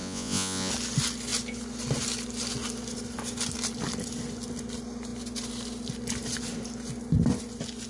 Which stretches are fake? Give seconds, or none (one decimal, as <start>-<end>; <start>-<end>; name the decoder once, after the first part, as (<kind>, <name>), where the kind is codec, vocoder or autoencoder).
0.0-0.7 (vocoder, Vocos)